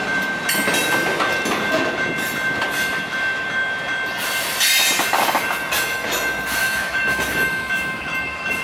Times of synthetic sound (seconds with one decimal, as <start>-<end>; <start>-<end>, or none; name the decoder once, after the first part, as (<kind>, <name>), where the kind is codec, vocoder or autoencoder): 6.6-8.6 (autoencoder, DAC-VAE)